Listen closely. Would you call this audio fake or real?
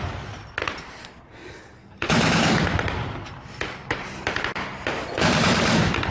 fake